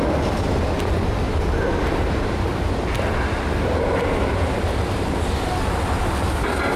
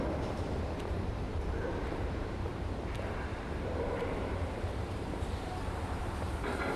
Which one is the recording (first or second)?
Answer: first